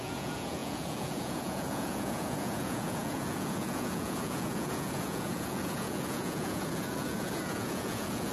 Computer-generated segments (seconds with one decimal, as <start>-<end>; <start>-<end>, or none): 0.0-8.3

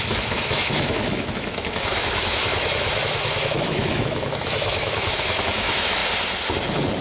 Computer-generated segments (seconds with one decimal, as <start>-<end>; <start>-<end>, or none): 0.0-6.0

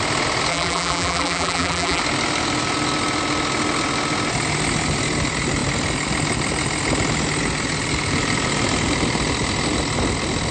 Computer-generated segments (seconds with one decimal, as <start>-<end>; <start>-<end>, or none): 0.5-2.0